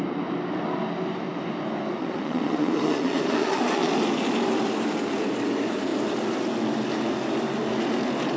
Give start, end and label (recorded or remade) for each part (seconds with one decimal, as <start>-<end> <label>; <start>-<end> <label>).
0.0-2.0 recorded; 2.0-3.9 remade; 3.9-8.4 recorded

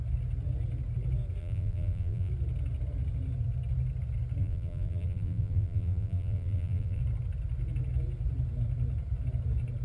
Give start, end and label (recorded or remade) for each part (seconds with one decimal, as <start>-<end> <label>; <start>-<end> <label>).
0.0-1.4 recorded; 1.4-2.3 remade; 2.3-4.4 recorded; 4.4-7.0 remade; 7.0-9.8 recorded

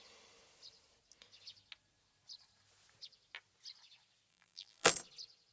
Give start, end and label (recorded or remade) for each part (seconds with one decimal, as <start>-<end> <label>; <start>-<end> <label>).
0.0-4.3 recorded; 4.3-4.9 remade; 4.9-5.5 recorded

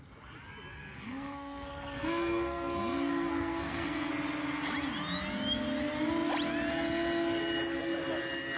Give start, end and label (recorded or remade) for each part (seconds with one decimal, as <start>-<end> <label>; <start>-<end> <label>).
0.0-0.7 recorded; 0.7-4.1 remade; 4.1-8.6 recorded

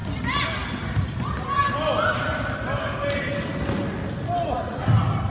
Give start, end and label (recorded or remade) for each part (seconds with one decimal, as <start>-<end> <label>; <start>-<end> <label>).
0.0-5.3 recorded

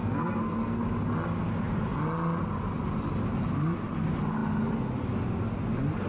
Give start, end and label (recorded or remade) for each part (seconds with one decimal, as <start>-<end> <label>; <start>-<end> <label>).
0.0-0.8 remade; 0.8-6.1 recorded

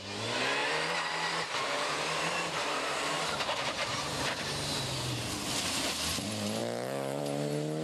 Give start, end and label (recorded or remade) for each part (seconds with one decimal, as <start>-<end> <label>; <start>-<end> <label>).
0.0-0.6 recorded; 0.6-5.3 remade; 5.3-7.8 recorded